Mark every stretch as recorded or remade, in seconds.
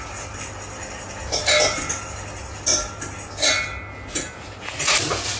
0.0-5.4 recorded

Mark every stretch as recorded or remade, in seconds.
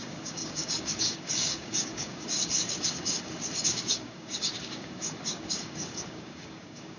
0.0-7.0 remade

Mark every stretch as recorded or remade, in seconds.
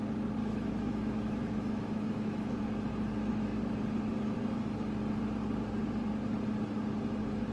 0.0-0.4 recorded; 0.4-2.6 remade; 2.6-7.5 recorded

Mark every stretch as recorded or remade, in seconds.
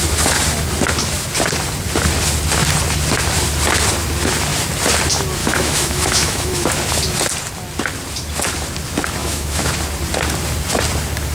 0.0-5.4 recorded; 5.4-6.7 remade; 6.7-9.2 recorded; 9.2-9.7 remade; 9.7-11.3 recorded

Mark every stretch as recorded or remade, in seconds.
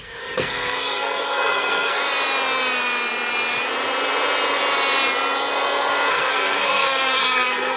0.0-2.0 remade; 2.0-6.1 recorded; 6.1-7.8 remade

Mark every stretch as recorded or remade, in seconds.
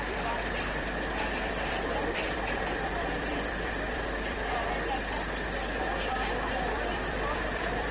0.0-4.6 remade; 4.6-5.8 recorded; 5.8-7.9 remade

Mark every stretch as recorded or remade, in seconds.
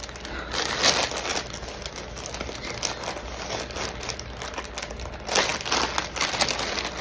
0.0-7.0 recorded